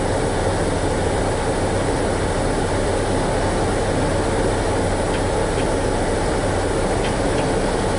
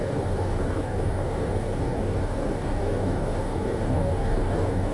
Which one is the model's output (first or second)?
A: second